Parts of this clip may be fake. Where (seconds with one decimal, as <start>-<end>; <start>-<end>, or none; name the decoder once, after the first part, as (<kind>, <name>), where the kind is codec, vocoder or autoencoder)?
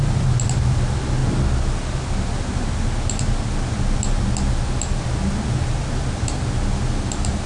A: none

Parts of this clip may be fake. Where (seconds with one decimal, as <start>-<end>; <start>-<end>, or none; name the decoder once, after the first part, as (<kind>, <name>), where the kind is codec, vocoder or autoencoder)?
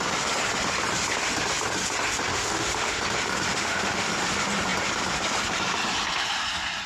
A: 2.3-3.0 (autoencoder, DAC-VAE); 3.5-4.1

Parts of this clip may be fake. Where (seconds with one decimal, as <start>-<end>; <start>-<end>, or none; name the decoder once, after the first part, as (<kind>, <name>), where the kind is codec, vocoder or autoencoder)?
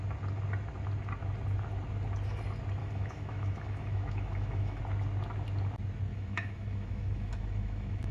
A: 2.8-4.8 (autoencoder, DAC-VAE); 6.1-8.1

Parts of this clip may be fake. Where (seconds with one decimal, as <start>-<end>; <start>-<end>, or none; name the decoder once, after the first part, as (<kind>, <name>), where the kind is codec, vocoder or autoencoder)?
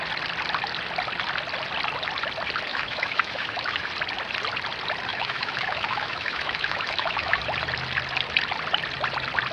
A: 2.7-3.9 (autoencoder, DAC-VAE); 5.1-7.4